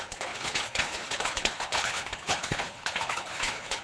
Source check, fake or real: fake